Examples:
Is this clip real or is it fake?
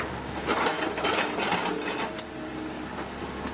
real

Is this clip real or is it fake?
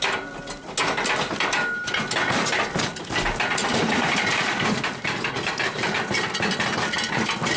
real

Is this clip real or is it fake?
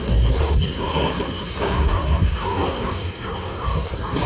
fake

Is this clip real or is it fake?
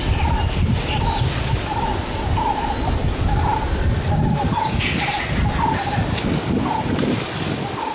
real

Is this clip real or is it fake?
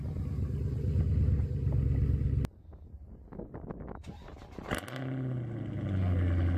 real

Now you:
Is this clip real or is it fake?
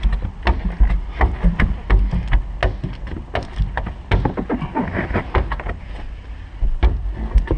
real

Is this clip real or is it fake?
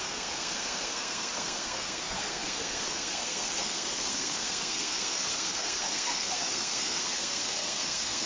fake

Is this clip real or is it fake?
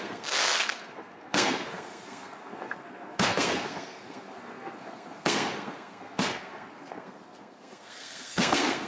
fake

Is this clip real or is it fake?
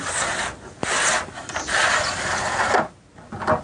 real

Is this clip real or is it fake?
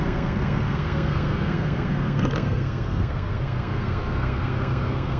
fake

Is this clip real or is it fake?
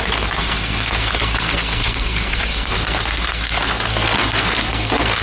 fake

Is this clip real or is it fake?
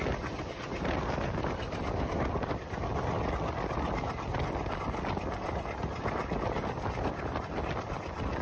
real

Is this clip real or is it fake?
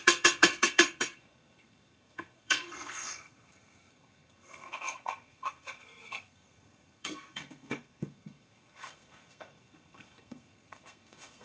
fake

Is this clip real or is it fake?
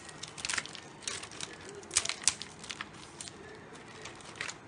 real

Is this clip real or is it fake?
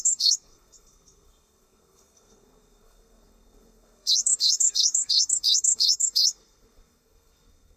fake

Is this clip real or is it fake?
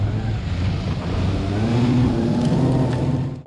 real